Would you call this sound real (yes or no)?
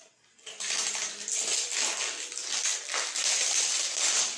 yes